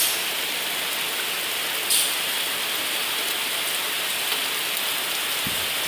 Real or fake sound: real